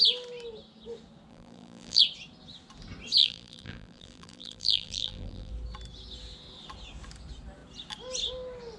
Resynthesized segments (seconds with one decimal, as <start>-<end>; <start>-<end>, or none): 1.3-2.0; 3.2-5.5